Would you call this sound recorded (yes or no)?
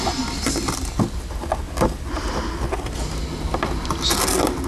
yes